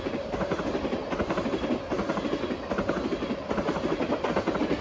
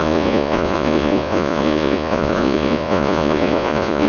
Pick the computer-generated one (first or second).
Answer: second